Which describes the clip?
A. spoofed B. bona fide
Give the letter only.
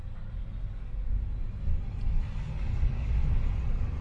B